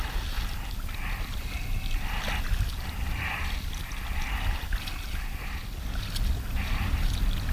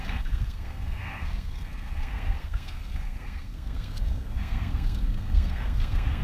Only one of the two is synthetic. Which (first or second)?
second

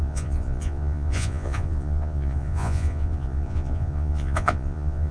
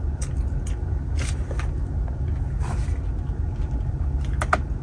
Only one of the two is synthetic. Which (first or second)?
first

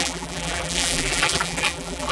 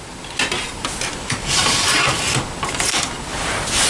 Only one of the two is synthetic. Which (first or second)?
first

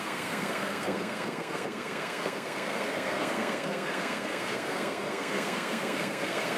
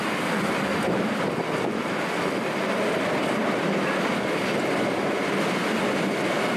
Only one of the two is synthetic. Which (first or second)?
first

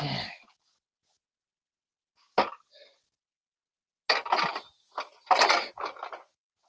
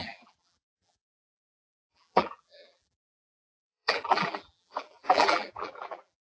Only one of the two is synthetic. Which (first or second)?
second